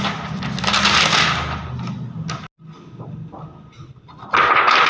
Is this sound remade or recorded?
recorded